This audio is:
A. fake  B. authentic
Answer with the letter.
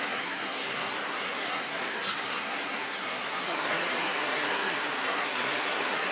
A